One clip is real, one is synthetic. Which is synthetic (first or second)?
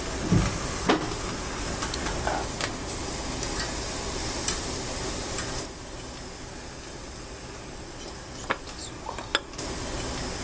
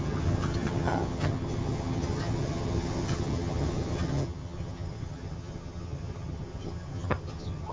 second